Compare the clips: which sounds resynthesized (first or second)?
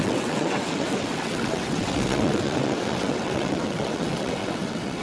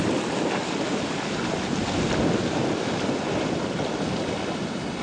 first